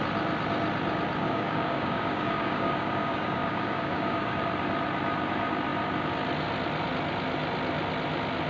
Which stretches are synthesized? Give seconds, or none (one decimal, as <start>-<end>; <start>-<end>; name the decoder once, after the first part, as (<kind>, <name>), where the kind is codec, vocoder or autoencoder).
1.2-4.4 (codec, DAC)